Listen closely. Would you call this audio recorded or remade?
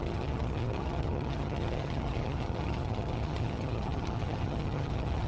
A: remade